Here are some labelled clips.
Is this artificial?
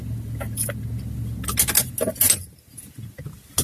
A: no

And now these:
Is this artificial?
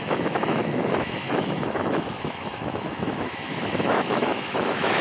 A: yes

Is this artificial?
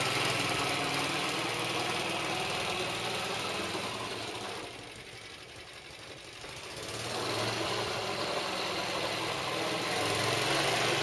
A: no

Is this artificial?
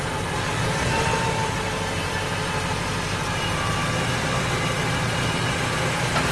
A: no